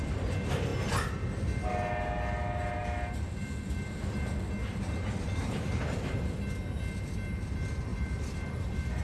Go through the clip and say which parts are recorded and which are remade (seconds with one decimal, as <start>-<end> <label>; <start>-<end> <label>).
0.0-2.8 recorded; 2.8-3.6 remade; 3.6-7.9 recorded; 7.9-9.0 remade